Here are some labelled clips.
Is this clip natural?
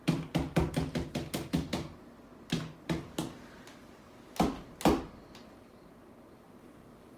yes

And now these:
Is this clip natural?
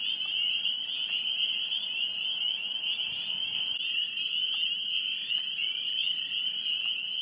yes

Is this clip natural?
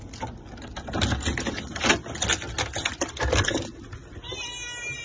yes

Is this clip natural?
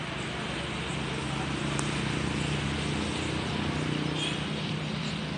yes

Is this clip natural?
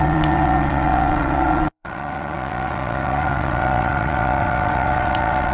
no